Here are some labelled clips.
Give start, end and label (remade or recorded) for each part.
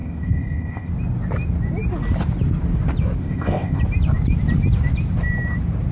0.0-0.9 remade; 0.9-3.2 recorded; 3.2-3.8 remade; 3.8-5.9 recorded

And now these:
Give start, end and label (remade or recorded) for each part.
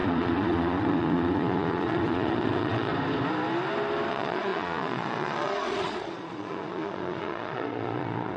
0.0-2.9 remade; 2.9-4.1 recorded; 4.1-8.4 remade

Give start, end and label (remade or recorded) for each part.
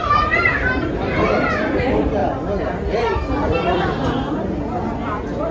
0.0-5.5 remade